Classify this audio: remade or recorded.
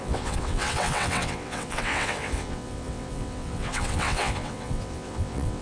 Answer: remade